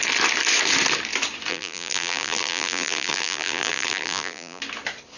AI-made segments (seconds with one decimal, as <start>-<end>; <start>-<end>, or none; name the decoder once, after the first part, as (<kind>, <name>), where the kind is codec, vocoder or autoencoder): 1.5-4.6 (vocoder, BigVGAN v2)